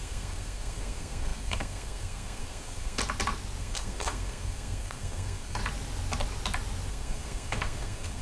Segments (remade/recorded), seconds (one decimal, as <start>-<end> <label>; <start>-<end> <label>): 0.0-3.0 remade; 3.0-3.6 recorded; 3.6-5.6 remade; 5.6-6.9 recorded; 6.9-8.2 remade